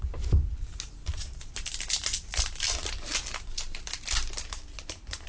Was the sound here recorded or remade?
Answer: recorded